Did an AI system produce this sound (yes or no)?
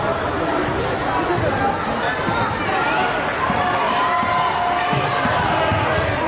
no